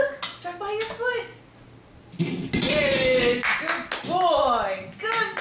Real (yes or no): yes